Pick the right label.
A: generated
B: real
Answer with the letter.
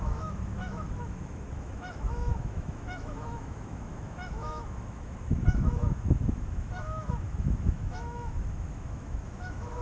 A